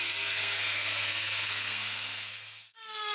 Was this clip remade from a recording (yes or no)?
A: yes